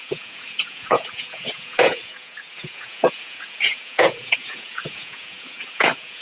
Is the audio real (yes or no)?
no